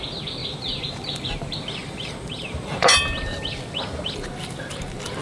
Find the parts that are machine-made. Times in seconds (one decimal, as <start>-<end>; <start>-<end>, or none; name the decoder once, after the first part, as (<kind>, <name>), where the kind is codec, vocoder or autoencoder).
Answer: 0.4-1.3 (vocoder, BigVGAN v2); 1.8-3.0